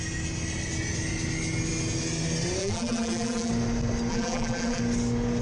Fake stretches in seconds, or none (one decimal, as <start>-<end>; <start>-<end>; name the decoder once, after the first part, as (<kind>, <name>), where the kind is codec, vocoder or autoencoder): 2.6-3.5 (vocoder, BigVGAN v2); 4.1-4.8